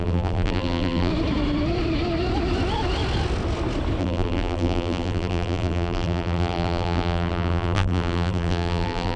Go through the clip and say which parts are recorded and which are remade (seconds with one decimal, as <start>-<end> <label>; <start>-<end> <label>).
0.0-1.1 remade; 1.1-4.0 recorded; 4.0-9.2 remade